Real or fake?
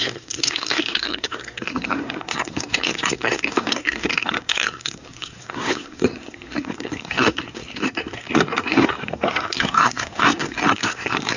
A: fake